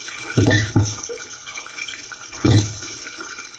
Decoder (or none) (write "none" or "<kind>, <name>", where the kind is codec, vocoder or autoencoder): codec, HILCodec